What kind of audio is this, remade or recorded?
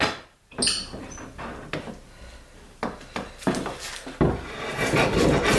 recorded